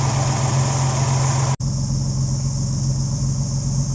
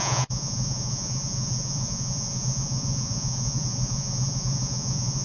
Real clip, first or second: first